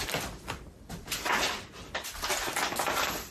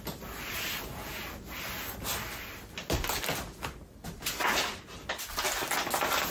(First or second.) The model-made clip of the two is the first